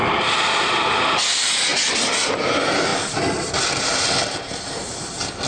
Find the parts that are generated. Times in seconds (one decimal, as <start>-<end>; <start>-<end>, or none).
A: none